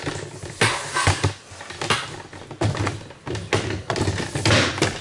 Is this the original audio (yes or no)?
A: yes